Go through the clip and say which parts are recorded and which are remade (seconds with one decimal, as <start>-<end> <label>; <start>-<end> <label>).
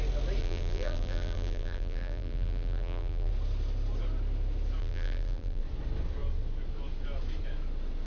0.0-0.4 recorded; 0.4-3.3 remade; 3.3-4.8 recorded; 4.8-5.6 remade; 5.6-8.1 recorded